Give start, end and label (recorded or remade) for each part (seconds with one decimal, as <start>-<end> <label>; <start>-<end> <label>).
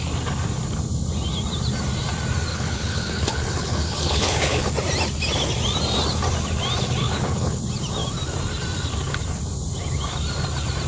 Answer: 0.0-2.5 recorded; 2.5-4.7 remade; 4.7-7.0 recorded; 7.0-7.6 remade; 7.6-10.9 recorded